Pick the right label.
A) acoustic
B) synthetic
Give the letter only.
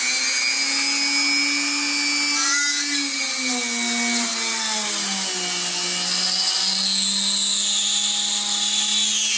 A